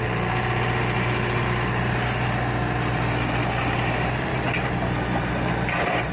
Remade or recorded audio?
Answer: recorded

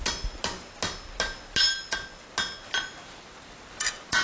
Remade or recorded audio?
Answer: recorded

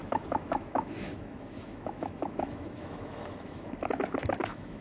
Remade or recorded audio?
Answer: remade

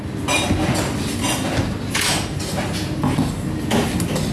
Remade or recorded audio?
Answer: recorded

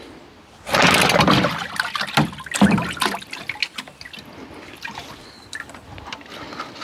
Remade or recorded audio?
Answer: recorded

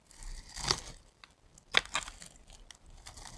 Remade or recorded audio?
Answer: recorded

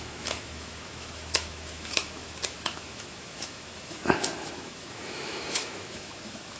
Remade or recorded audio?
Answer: remade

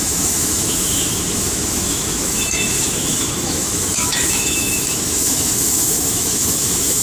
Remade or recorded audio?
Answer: remade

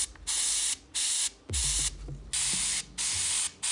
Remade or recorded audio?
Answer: recorded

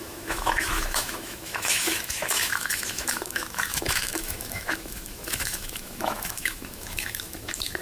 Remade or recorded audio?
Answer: remade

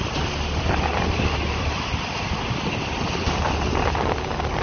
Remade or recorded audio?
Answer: recorded